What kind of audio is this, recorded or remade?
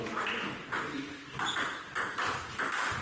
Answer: recorded